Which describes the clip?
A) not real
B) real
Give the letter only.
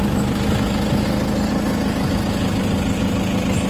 B